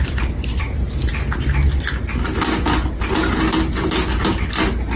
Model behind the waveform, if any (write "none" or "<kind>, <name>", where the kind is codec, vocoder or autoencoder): none